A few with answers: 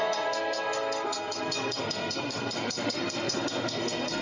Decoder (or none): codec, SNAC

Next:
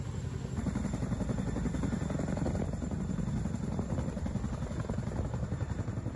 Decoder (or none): none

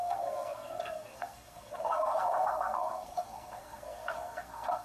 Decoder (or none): codec, SNAC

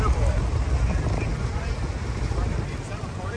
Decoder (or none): none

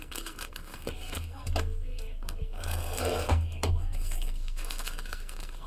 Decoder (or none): codec, SNAC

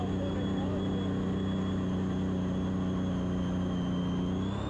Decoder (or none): none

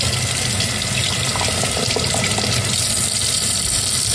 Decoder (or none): none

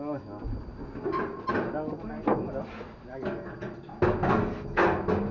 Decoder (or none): none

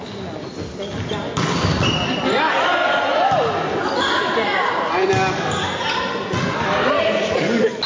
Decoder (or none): none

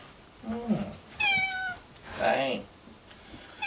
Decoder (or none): none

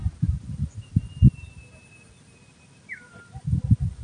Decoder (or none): none